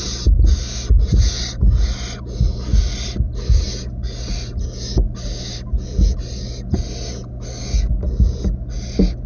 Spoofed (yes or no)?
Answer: no